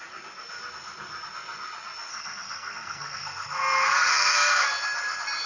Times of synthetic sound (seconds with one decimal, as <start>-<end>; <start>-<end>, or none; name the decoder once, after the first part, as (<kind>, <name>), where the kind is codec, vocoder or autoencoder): 2.1-4.6 (codec, SNAC)